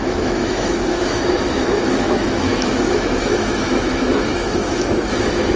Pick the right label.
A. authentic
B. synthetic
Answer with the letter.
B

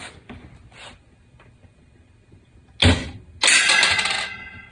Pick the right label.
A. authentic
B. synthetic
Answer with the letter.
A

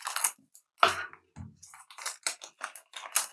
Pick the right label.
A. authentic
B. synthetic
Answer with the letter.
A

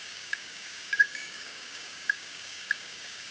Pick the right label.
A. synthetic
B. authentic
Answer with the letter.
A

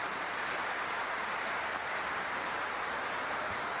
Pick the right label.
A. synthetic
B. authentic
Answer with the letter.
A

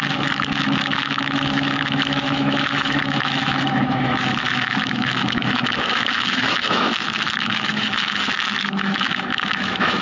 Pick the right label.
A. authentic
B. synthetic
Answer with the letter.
B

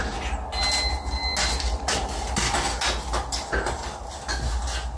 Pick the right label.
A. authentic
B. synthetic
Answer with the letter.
A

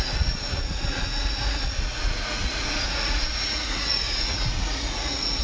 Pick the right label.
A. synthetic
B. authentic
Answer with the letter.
A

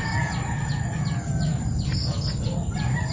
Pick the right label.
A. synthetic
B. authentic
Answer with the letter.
B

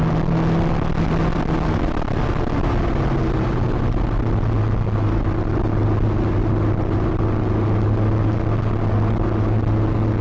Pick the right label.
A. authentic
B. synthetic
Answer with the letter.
A